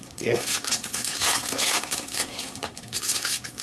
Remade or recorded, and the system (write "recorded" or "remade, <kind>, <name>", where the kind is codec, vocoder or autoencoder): remade, codec, SNAC